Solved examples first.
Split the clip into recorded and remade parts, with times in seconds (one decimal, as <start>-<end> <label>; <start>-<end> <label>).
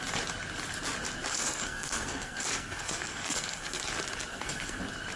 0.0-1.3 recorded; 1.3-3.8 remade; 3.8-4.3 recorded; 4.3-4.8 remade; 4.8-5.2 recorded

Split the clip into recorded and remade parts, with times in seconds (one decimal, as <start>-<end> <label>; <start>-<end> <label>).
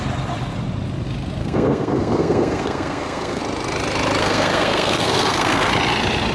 0.0-1.4 recorded; 1.4-3.4 remade; 3.4-4.2 recorded; 4.2-5.7 remade; 5.7-6.3 recorded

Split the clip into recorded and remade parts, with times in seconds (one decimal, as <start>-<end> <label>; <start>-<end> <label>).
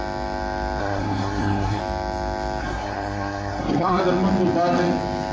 0.0-0.8 recorded; 0.8-1.8 remade; 1.8-2.6 recorded; 2.6-4.0 remade; 4.0-5.3 recorded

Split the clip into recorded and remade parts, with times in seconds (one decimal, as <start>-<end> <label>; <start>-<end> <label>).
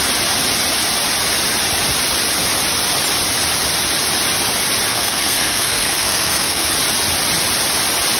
0.0-4.9 recorded; 4.9-6.7 remade; 6.7-8.2 recorded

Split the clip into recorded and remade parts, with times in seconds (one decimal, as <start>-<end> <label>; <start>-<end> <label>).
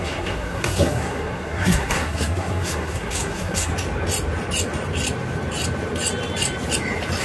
0.0-3.7 remade; 3.7-7.2 recorded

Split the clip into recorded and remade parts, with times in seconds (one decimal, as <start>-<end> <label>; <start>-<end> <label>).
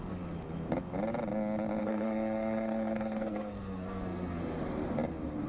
0.0-1.8 recorded; 1.8-4.4 remade; 4.4-5.5 recorded